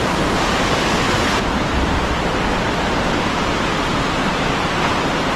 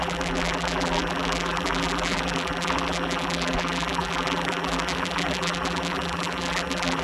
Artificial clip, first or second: second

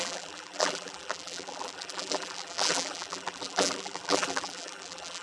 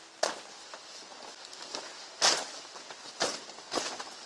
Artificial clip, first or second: first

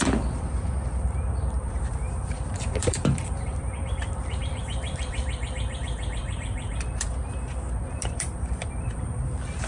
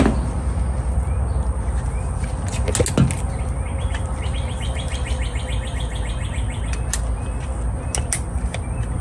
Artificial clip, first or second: first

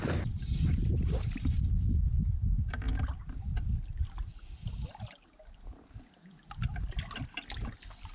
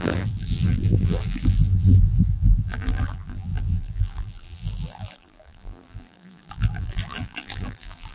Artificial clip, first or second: second